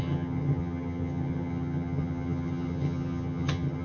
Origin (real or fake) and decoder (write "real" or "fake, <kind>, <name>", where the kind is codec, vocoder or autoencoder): fake, vocoder, HiFi-GAN